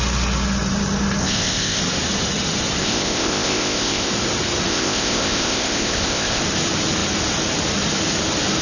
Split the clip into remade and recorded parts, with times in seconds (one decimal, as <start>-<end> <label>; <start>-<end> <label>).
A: 0.0-1.2 recorded; 1.2-1.8 remade; 1.8-2.8 recorded; 2.8-4.1 remade; 4.1-4.7 recorded; 4.7-6.4 remade; 6.4-8.6 recorded